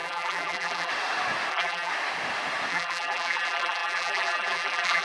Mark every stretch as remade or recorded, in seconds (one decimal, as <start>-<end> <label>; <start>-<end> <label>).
0.0-0.9 remade; 0.9-1.5 recorded; 1.5-1.9 remade; 1.9-2.7 recorded; 2.7-5.0 remade